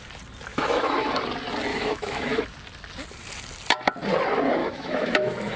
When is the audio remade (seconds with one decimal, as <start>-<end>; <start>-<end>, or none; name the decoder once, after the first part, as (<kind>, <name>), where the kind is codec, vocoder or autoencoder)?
0.5-1.2 (autoencoder, DAC-VAE); 1.7-2.4; 4.6-5.6